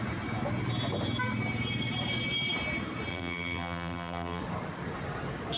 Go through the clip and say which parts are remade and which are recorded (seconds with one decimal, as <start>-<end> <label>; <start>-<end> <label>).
0.0-3.1 recorded; 3.1-4.4 remade; 4.4-5.6 recorded